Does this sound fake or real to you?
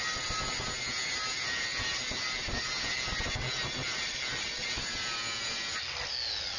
real